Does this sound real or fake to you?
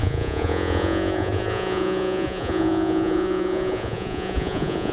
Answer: fake